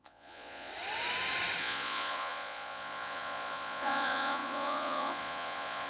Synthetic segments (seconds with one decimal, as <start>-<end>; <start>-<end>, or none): 0.0-0.7; 1.6-5.9